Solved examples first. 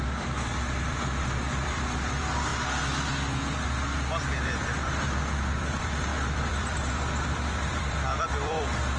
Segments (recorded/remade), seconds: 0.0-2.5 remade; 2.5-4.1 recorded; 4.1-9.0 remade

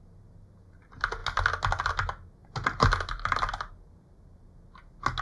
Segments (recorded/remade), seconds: 0.0-5.2 recorded

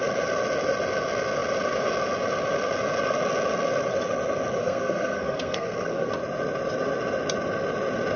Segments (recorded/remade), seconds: 0.0-4.6 recorded; 4.6-6.1 remade; 6.1-8.2 recorded

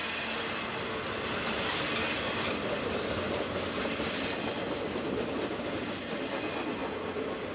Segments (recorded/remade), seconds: 0.0-7.5 recorded

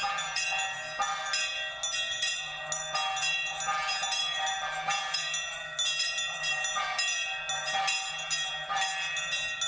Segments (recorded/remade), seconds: 0.0-9.7 recorded